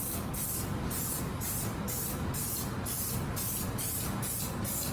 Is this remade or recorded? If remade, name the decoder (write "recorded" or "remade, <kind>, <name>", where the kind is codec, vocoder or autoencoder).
recorded